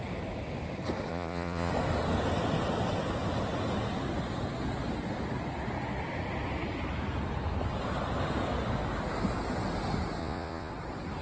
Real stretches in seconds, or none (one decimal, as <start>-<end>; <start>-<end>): 0.0-1.1; 1.7-10.2; 10.7-11.2